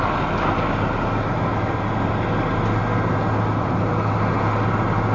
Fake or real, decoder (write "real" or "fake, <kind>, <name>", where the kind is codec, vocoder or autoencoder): real